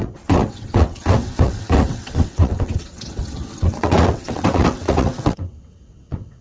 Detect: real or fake fake